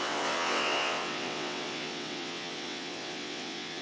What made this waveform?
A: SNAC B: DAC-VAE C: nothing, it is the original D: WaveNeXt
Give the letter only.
D